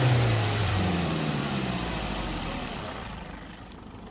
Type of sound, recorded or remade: remade